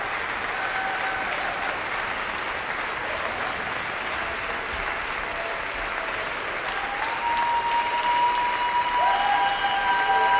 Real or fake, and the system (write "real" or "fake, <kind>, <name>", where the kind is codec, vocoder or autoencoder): real